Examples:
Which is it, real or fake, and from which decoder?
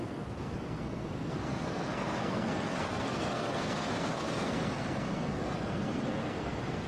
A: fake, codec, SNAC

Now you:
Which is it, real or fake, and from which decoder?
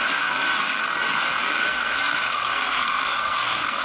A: fake, codec, SNAC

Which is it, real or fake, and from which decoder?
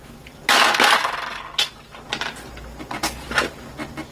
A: real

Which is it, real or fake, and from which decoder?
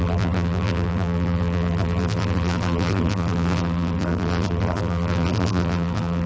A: fake, vocoder, BigVGAN v2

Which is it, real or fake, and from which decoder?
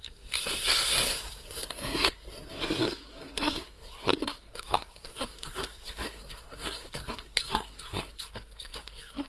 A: fake, codec, SNAC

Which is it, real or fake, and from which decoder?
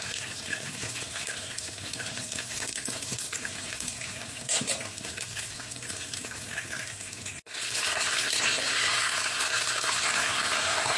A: fake, codec, SNAC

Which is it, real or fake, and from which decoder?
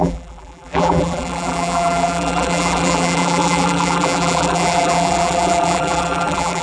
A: fake, vocoder, BigVGAN v2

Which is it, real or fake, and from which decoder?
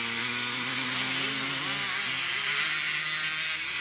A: real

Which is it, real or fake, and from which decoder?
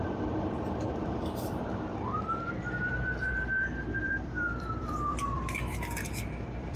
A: fake, vocoder, BigVGAN v2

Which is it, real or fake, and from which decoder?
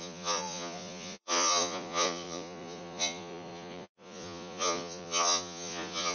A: fake, vocoder, Vocos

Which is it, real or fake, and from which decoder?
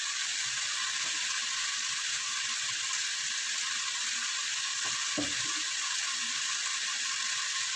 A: real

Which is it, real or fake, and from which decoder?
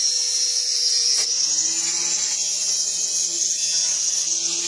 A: real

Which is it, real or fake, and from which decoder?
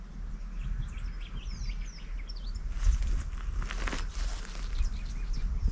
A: real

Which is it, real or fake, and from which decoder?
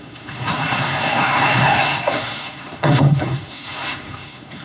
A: fake, codec, SNAC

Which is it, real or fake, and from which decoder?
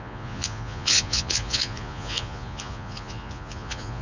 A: fake, vocoder, Vocos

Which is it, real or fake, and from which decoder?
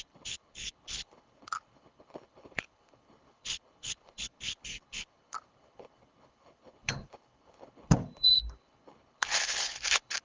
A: fake, codec, HILCodec